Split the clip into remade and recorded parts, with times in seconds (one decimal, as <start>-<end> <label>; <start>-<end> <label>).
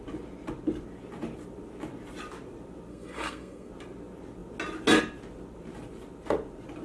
0.0-2.9 recorded; 2.9-3.7 remade; 3.7-6.8 recorded